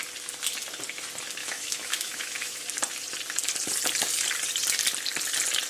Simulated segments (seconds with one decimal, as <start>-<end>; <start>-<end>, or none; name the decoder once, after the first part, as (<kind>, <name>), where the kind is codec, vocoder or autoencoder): 1.4-2.6 (autoencoder, DAC-VAE)

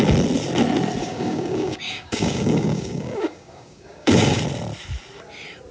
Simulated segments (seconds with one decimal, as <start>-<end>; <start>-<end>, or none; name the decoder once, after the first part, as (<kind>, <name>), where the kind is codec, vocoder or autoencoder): 1.0-4.4 (codec, DAC)

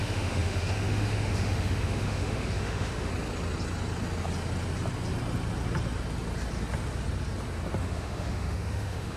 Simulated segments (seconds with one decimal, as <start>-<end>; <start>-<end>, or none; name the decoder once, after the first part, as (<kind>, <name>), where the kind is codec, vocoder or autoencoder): 0.0-3.1 (autoencoder, DAC-VAE); 7.8-9.2

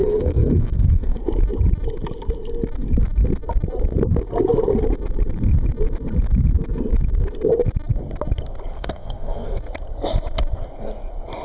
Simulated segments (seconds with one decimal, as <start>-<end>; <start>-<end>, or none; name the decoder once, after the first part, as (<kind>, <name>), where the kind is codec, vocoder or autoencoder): 0.0-1.2 (codec, SNAC); 8.7-9.6

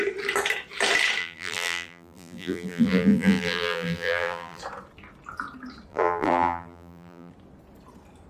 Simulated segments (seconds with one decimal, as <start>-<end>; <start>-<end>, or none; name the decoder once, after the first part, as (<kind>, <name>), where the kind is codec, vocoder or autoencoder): 1.2-4.6 (vocoder, BigVGAN v2); 5.9-7.3

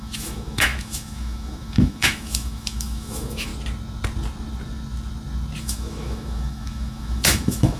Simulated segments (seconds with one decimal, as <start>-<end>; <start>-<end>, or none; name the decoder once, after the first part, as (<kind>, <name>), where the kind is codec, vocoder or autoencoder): 0.0-3.5 (autoencoder, DAC-VAE); 5.6-7.8

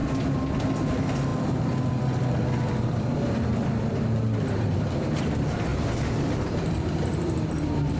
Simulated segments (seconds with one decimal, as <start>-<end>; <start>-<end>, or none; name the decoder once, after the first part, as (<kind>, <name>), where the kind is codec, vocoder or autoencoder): 0.6-8.0 (vocoder, BigVGAN v2)

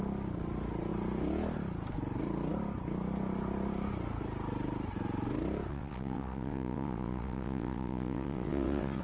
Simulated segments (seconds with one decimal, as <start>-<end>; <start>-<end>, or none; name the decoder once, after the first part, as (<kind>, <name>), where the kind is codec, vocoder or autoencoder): 5.7-9.0 (vocoder, WaveNeXt)